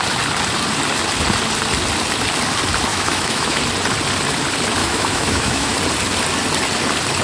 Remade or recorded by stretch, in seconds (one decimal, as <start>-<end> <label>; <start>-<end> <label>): 0.0-2.9 recorded; 2.9-3.6 remade; 3.6-4.8 recorded; 4.8-5.8 remade; 5.8-7.2 recorded